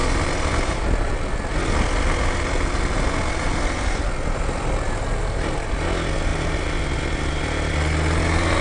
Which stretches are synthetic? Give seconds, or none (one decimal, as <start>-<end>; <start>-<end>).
none

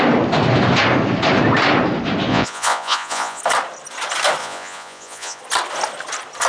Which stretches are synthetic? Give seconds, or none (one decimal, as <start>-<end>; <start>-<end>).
2.3-3.4; 4.4-5.4

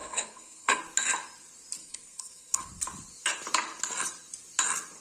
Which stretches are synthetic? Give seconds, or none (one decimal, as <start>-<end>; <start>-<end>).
0.0-0.8; 1.8-2.7

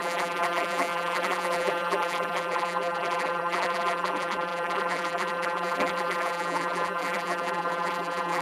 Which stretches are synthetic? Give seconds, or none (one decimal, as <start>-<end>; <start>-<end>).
0.0-8.4

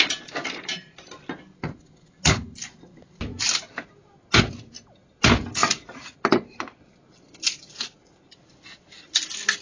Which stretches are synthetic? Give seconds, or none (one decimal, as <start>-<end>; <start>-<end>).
5.6-6.2

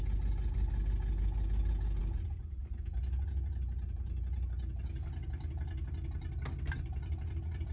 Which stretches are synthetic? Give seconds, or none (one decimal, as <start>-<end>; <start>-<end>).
none